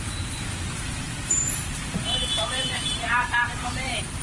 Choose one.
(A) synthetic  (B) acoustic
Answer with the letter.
A